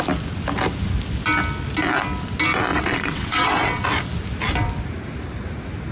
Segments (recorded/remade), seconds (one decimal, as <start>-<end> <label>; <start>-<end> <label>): 0.0-2.7 recorded; 2.7-3.8 remade; 3.8-5.9 recorded

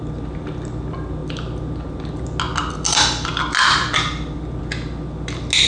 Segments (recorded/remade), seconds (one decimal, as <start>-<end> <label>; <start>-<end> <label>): 0.0-5.7 recorded

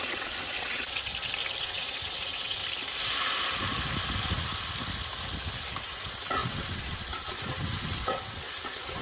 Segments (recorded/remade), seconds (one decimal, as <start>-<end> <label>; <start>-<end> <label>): 0.0-1.1 remade; 1.1-1.6 recorded; 1.6-2.6 remade; 2.6-5.8 recorded; 5.8-9.0 remade

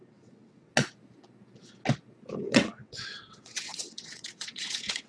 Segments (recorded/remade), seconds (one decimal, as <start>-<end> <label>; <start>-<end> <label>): 0.0-0.7 remade; 0.7-2.4 recorded; 2.4-5.1 remade

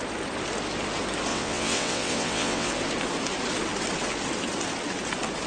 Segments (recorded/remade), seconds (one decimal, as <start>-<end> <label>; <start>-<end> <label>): 0.0-1.3 recorded; 1.3-2.7 remade; 2.7-5.5 recorded

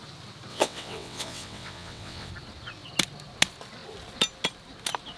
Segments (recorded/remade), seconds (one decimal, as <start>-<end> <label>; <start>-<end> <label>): 0.0-0.5 recorded; 0.5-2.3 remade; 2.3-5.2 recorded

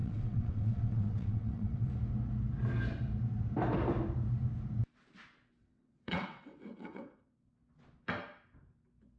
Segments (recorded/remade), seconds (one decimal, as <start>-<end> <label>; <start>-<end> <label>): 0.0-1.9 remade; 1.9-5.6 recorded; 5.6-7.5 remade; 7.5-9.2 recorded